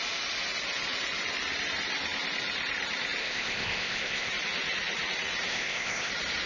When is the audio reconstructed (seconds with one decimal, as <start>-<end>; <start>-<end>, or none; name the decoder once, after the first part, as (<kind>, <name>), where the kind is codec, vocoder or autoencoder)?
3.2-4.3 (codec, ZipCodec); 5.5-6.1